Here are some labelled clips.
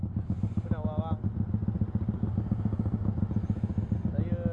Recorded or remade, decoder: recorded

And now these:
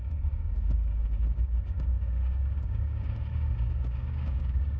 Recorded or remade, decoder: remade, codec, DAC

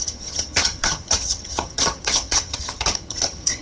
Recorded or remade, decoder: remade, vocoder, HiFi-GAN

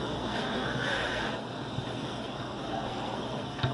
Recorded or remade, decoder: remade, codec, SNAC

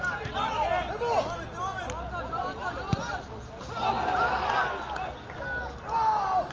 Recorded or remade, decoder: recorded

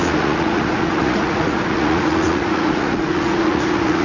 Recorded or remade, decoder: remade, vocoder, Vocos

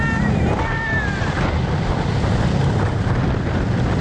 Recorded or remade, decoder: recorded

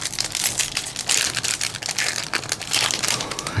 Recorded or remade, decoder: recorded